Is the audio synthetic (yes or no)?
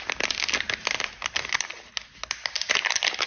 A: no